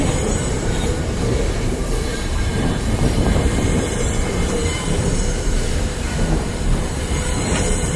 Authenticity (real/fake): fake